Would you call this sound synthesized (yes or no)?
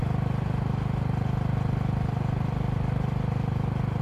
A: yes